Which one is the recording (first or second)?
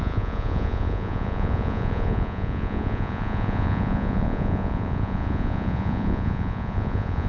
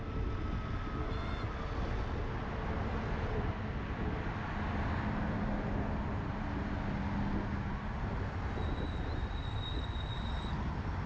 second